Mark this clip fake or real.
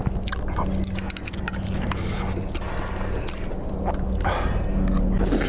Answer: real